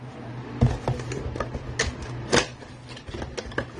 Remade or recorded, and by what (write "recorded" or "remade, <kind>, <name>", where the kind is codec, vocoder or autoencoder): recorded